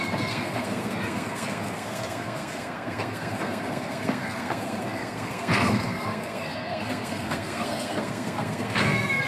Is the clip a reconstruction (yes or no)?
yes